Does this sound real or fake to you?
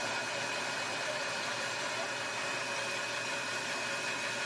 fake